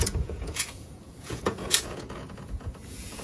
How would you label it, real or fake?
fake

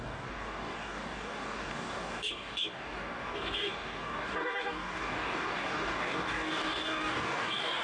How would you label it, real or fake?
fake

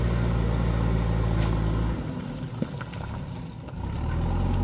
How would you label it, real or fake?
real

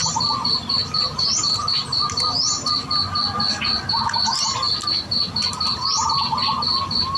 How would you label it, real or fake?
real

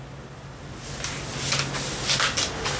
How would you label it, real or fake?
real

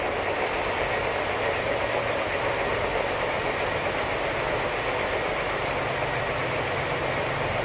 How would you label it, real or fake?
real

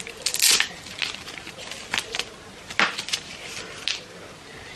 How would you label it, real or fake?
real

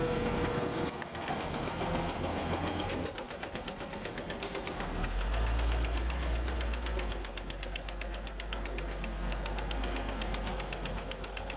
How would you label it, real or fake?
fake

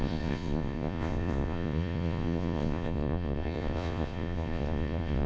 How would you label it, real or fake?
fake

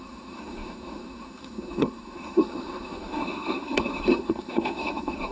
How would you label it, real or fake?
fake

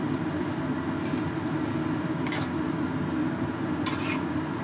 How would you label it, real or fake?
real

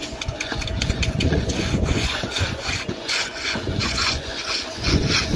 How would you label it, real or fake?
fake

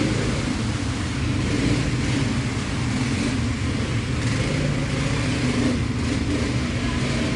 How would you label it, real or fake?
real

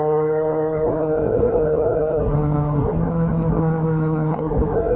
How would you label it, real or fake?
fake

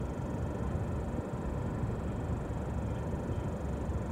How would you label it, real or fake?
real